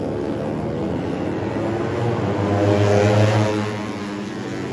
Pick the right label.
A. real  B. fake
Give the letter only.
A